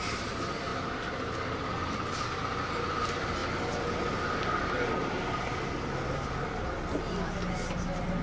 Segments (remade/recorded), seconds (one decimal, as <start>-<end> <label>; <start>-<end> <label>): 0.0-8.2 recorded